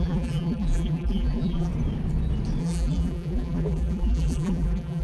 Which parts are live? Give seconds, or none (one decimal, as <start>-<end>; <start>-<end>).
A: 1.7-2.6

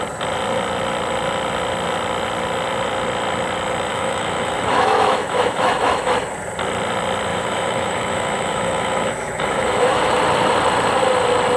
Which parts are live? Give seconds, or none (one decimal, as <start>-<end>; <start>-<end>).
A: 0.0-3.9; 6.1-7.3; 10.1-11.6

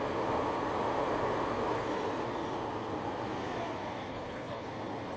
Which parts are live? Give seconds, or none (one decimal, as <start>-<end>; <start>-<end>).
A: 0.0-4.1; 4.7-5.2

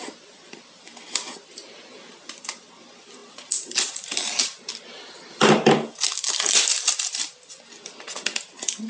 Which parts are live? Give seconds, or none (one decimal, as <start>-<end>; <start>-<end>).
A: 0.0-8.9

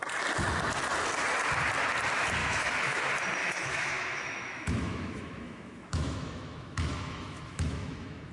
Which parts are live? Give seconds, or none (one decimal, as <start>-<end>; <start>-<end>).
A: 0.0-2.4; 3.0-3.4

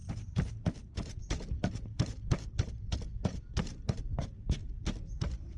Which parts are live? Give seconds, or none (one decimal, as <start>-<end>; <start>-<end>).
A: 0.0-2.5; 4.6-5.6

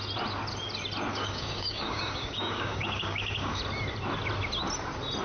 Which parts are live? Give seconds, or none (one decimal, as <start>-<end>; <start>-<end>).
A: 0.0-1.1; 3.6-5.2

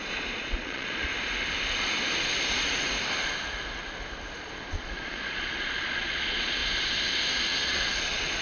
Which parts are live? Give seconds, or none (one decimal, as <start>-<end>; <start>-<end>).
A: 1.1-4.4; 6.6-7.6